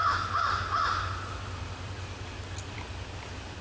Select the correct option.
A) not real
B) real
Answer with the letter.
B